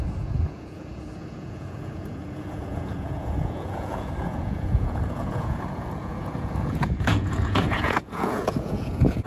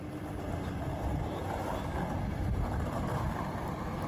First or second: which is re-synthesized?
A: first